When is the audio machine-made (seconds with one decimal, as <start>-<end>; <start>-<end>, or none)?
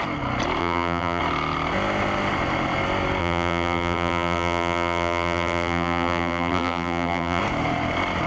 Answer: 0.6-1.2; 3.2-7.4